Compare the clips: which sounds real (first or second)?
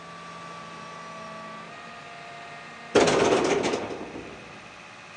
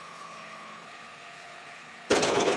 first